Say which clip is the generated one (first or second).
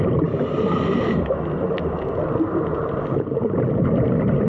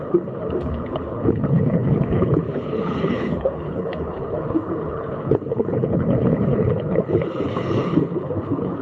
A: second